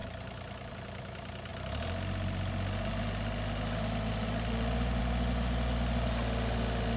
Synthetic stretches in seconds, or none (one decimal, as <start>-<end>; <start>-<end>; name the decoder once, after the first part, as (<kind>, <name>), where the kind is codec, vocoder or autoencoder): none